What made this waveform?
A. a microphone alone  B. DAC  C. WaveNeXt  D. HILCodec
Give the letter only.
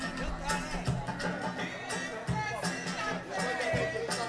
A